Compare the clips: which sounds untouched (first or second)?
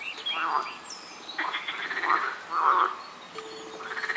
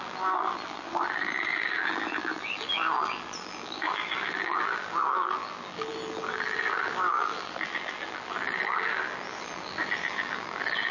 first